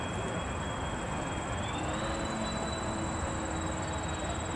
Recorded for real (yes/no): yes